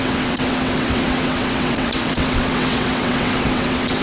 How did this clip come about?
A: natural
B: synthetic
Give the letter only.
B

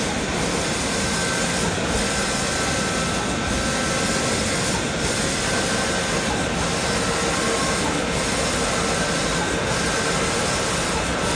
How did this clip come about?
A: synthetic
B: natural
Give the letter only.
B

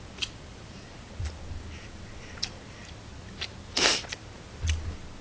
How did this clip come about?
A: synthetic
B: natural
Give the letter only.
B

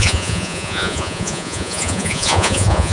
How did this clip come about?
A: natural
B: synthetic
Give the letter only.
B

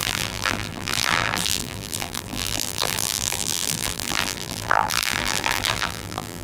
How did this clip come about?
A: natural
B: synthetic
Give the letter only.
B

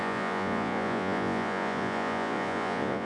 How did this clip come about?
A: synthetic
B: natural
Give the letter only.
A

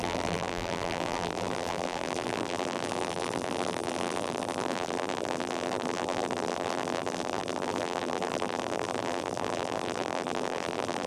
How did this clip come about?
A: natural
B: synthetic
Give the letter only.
B